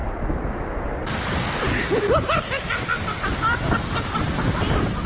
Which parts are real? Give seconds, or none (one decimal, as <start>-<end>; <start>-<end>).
0.0-5.1